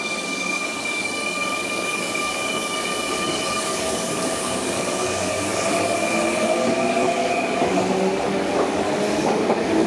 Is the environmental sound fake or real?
fake